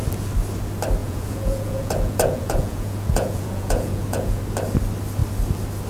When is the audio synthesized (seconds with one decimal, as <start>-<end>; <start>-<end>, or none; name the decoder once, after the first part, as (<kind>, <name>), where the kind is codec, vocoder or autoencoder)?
1.0-4.4 (vocoder, Vocos)